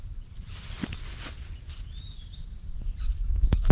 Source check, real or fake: real